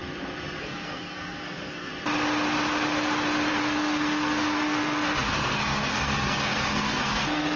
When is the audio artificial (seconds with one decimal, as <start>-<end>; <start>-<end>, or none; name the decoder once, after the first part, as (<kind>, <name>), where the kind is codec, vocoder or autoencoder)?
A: 0.6-1.9 (codec, SNAC); 3.5-7.6